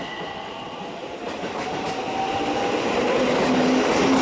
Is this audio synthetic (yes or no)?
no